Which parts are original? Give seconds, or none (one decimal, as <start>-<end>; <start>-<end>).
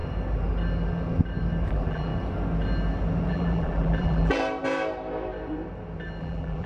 0.0-1.7; 2.1-3.3; 4.4-6.2